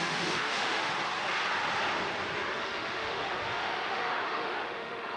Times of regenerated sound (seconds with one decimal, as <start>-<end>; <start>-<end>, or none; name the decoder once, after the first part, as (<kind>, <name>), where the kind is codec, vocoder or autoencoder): 0.0-0.9 (autoencoder, DAC-VAE); 2.5-5.2